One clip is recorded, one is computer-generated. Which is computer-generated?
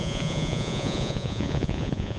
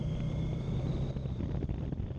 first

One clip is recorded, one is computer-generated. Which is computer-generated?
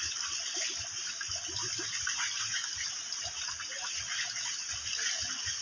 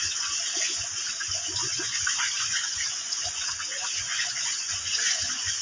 second